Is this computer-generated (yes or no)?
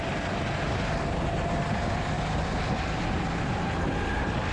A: no